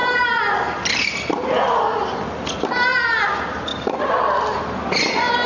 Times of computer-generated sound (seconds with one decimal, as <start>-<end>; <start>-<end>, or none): none